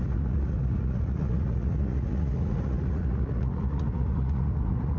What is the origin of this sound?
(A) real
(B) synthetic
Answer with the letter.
B